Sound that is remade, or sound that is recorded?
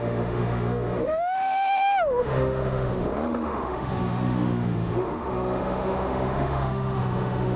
remade